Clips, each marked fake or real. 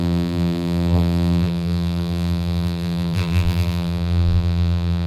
fake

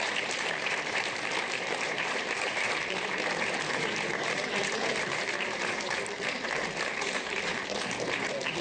fake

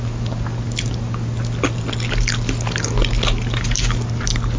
real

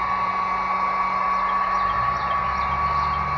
real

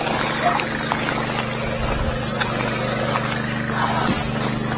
real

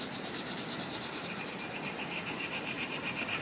fake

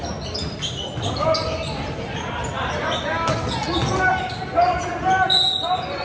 real